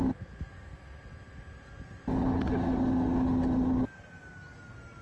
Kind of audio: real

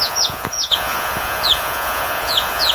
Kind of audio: fake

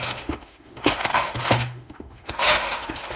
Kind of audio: fake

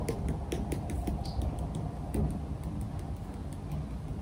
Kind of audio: real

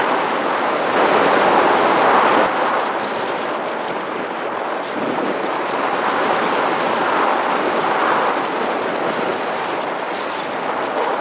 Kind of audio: real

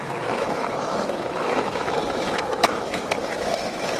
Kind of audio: fake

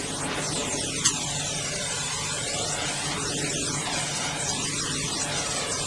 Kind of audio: real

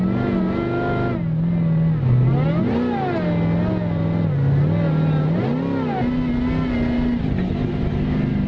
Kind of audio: real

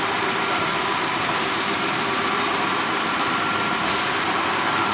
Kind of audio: fake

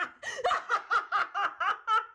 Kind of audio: real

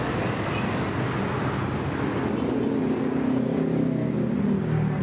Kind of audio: real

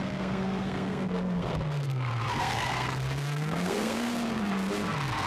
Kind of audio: fake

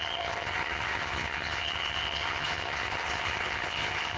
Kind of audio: fake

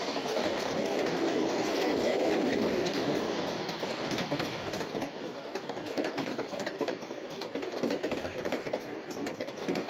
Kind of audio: fake